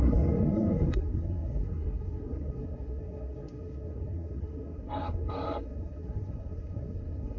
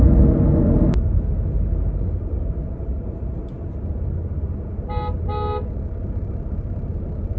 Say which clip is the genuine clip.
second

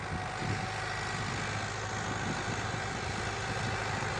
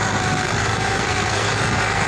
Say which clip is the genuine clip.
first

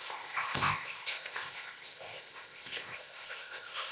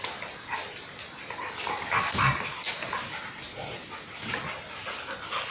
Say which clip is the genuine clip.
second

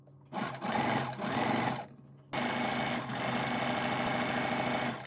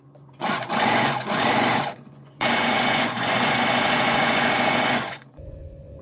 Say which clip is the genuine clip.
first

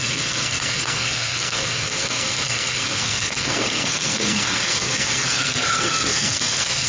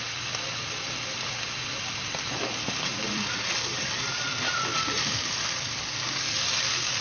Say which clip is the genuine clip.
second